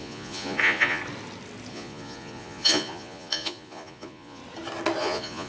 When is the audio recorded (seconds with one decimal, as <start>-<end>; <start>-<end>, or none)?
1.0-1.7; 4.4-5.0

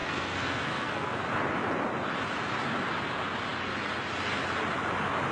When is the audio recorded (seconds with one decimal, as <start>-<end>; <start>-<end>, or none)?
1.2-5.3